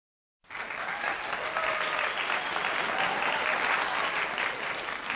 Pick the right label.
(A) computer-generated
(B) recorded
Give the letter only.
B